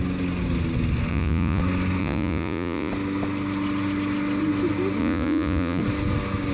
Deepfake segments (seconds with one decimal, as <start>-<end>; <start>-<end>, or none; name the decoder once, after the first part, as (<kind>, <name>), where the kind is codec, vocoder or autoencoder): 1.1-1.6 (vocoder, Vocos); 2.0-2.9; 5.0-5.8